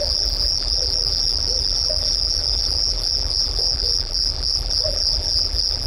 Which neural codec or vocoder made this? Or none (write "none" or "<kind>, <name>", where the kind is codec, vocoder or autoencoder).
vocoder, BigVGAN v2